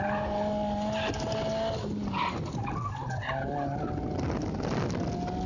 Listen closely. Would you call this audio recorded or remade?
recorded